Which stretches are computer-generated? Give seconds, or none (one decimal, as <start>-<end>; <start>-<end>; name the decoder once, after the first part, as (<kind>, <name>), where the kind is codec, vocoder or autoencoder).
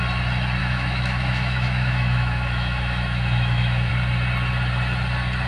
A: 0.6-3.9 (autoencoder, DAC-VAE)